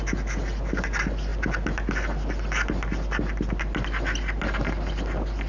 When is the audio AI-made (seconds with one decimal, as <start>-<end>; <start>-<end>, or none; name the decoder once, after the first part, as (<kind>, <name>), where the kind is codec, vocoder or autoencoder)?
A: none